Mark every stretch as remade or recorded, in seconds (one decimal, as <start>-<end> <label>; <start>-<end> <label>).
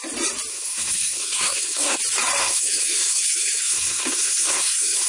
0.0-0.5 recorded; 0.5-2.0 remade; 2.0-2.4 recorded; 2.4-5.1 remade